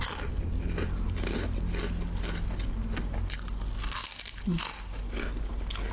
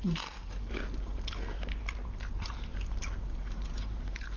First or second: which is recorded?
first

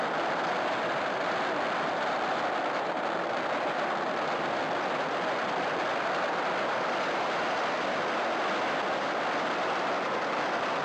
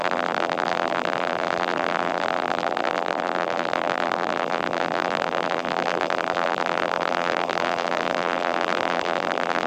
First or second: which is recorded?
first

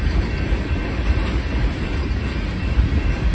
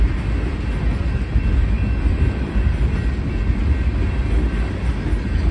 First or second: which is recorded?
second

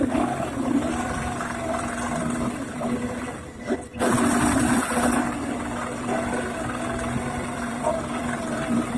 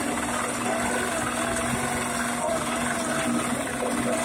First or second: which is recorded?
second